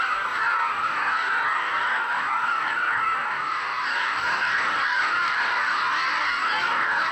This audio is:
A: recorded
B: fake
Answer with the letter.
B